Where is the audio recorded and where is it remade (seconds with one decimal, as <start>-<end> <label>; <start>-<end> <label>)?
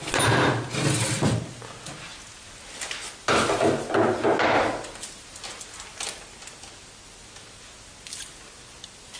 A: 0.0-9.2 recorded